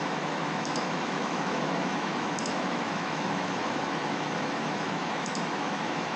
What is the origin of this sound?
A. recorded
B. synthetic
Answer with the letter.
B